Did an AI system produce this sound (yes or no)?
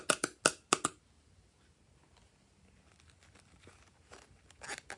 no